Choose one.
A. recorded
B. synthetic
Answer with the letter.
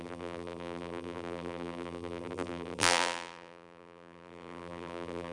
B